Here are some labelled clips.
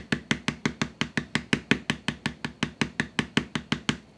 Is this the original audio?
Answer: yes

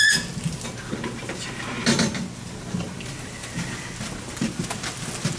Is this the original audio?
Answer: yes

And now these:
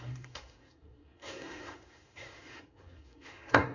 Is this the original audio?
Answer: no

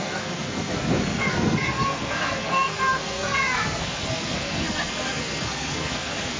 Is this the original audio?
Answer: no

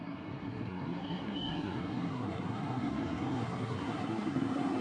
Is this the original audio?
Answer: no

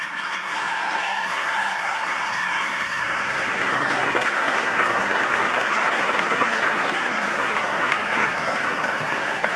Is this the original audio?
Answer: no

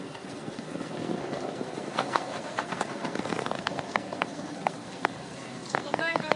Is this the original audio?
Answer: no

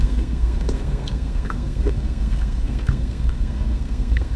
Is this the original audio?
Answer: no